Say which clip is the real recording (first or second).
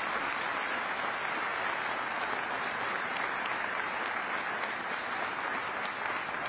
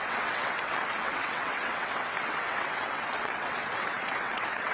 first